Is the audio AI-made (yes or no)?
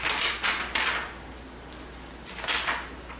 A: no